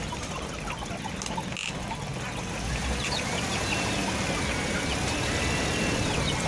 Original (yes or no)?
yes